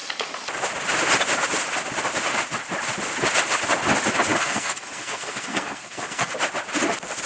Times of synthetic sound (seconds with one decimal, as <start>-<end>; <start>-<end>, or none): 4.3-6.3